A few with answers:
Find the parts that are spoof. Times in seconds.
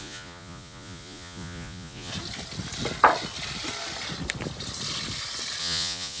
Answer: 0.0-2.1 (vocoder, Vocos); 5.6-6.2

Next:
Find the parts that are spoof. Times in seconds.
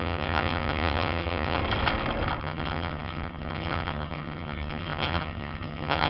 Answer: 0.0-1.6 (vocoder, HiFi-GAN); 2.4-6.1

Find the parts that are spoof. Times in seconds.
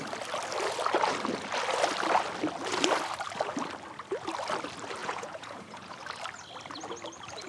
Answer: 5.0-6.0 (vocoder, Vocos)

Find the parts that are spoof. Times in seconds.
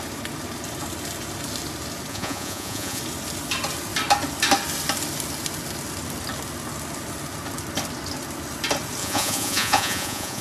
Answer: 2.1-3.0 (vocoder, Vocos); 9.0-10.4